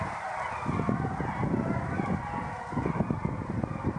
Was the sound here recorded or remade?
recorded